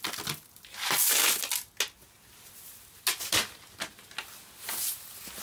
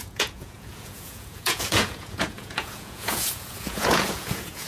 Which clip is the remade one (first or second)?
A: second